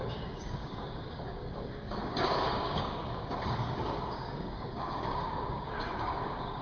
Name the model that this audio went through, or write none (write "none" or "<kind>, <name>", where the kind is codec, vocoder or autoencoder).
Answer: codec, DAC